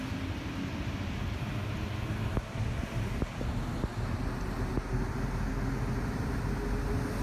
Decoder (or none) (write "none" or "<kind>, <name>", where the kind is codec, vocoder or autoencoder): none